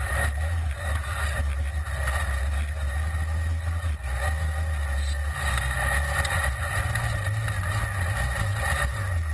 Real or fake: real